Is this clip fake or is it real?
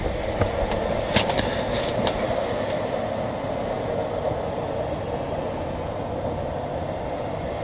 real